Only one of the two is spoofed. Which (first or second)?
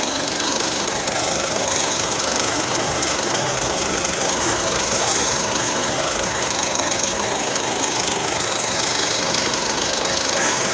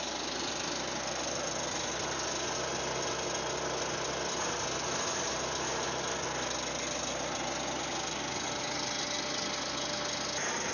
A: first